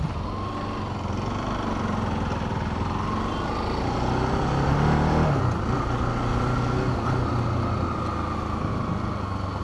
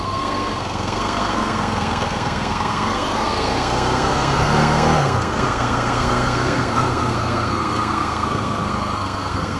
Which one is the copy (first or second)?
second